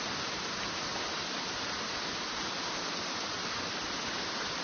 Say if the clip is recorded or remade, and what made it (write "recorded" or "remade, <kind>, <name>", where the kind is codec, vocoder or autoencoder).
recorded